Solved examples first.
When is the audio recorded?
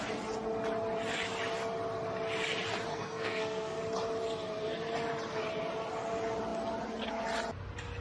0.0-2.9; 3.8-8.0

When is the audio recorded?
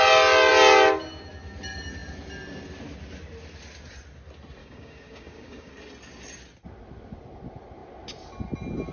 0.0-4.6; 5.7-8.9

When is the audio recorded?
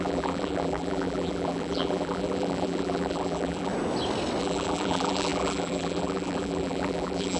3.7-4.4